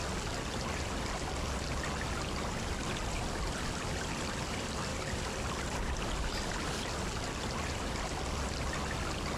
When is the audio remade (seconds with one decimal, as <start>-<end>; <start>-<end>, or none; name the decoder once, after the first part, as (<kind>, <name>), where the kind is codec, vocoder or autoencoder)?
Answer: none